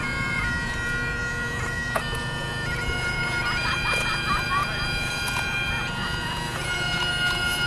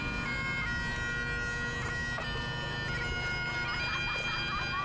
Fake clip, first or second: first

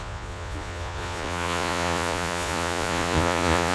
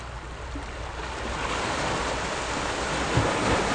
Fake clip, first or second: first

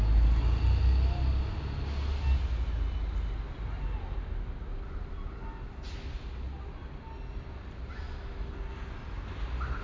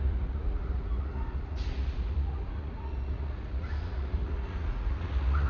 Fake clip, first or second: second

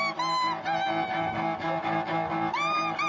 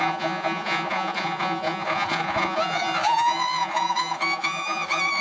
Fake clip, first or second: second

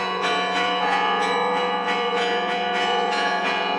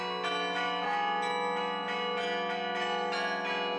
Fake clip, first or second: first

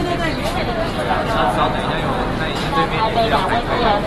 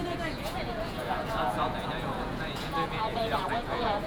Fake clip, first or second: second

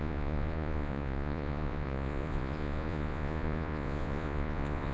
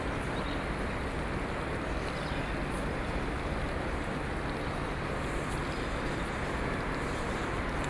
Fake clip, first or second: first